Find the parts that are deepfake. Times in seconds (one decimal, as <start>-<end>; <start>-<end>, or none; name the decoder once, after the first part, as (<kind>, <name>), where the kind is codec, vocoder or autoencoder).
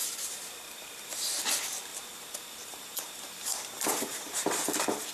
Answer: 0.0-1.3 (vocoder, BigVGAN v2); 1.9-5.1